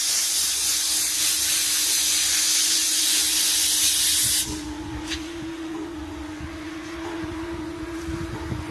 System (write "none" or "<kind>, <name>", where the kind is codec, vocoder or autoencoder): vocoder, Vocos